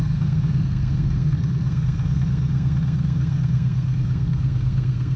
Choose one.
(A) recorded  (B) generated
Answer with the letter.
B